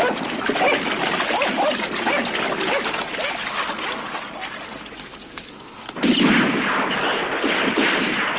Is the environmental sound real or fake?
real